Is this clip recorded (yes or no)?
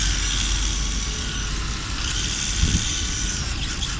yes